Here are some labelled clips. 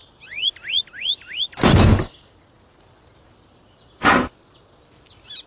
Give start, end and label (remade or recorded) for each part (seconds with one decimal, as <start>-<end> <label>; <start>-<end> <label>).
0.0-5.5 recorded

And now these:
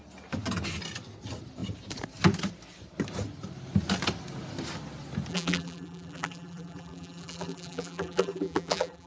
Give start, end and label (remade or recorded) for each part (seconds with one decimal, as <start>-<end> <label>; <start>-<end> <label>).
0.0-5.3 recorded; 5.3-9.1 remade

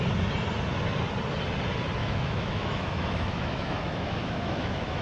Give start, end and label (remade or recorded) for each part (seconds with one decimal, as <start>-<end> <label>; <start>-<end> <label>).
0.0-2.0 recorded; 2.0-5.0 remade

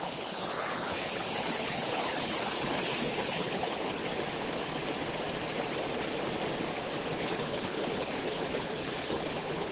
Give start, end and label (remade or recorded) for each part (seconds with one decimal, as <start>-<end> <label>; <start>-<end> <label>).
0.0-4.0 remade; 4.0-7.2 recorded; 7.2-9.7 remade